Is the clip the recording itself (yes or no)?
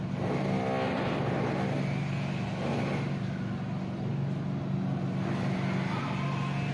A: yes